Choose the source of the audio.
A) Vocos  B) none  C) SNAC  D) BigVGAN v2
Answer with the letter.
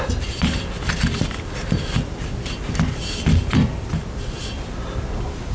B